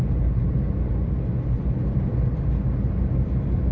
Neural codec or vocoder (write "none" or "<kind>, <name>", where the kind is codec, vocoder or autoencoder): none